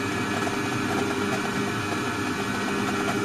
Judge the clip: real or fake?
real